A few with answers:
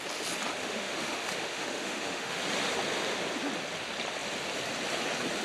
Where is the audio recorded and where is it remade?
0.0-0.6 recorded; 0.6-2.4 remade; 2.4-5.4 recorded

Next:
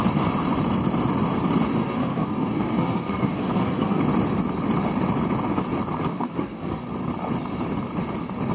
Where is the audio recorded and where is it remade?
0.0-1.8 recorded; 1.8-4.0 remade; 4.0-6.1 recorded; 6.1-6.8 remade; 6.8-8.5 recorded

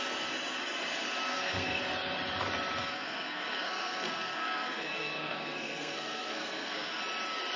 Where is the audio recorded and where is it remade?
0.0-1.3 recorded; 1.3-1.8 remade; 1.8-2.8 recorded; 2.8-7.0 remade; 7.0-7.6 recorded

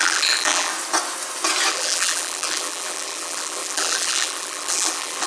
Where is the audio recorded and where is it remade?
0.0-0.7 remade; 0.7-1.7 recorded; 1.7-5.3 remade

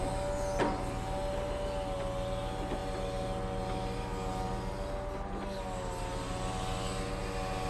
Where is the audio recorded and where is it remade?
0.0-7.7 recorded

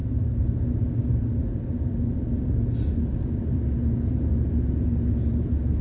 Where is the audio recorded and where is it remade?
0.0-5.8 recorded